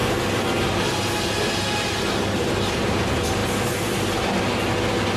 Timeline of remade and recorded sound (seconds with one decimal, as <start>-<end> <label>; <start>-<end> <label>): 0.0-5.2 recorded